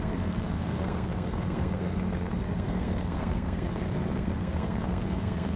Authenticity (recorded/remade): remade